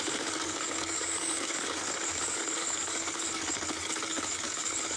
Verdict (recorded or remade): remade